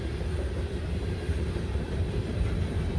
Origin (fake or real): fake